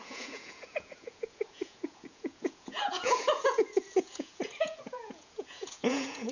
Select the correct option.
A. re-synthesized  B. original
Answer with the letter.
A